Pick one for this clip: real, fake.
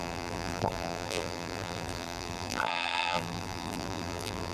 fake